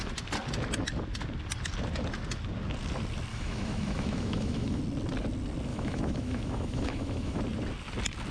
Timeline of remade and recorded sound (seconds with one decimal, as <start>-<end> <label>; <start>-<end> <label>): 0.0-3.3 recorded; 3.3-4.8 remade; 4.8-5.7 recorded; 5.7-7.4 remade; 7.4-8.3 recorded